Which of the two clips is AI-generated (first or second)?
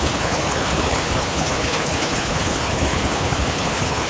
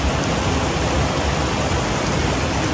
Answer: first